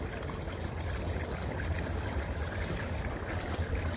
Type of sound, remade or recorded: recorded